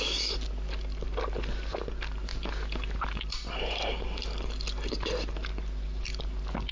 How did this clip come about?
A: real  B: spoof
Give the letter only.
A